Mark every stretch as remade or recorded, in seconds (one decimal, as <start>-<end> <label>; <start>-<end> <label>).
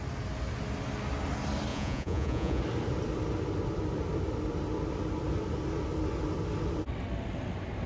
0.0-1.7 recorded; 1.7-2.6 remade; 2.6-7.9 recorded